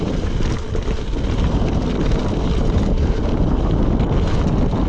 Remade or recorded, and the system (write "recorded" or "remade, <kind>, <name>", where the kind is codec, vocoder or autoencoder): recorded